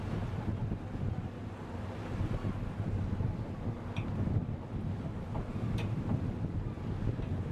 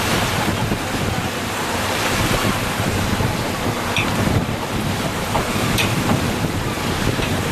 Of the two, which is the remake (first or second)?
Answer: second